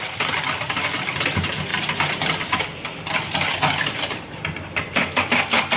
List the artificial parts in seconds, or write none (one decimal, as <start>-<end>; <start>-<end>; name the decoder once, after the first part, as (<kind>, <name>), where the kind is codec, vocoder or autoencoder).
1.7-5.2 (vocoder, BigVGAN v2)